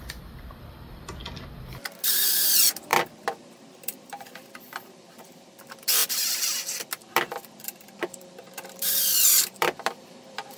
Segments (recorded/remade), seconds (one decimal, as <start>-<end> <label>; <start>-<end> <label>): 0.0-1.2 remade; 1.2-2.4 recorded; 2.4-10.6 remade